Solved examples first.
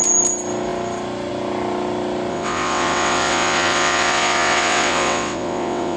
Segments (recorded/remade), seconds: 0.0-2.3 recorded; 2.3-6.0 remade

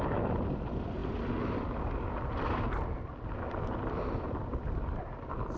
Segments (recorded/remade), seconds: 0.0-5.6 recorded

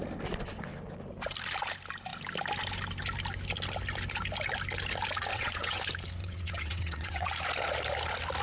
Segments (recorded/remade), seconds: 0.0-5.3 recorded; 5.3-5.8 remade; 5.8-6.2 recorded; 6.2-7.3 remade; 7.3-8.4 recorded